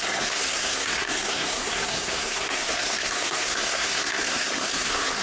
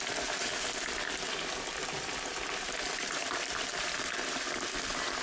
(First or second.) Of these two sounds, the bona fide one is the second